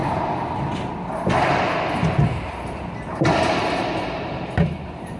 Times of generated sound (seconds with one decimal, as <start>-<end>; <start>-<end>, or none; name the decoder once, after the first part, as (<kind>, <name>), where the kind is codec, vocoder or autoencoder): none